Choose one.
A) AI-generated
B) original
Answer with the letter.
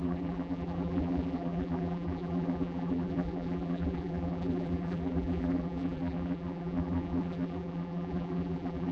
A